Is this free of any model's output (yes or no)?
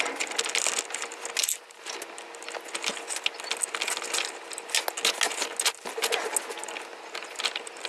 yes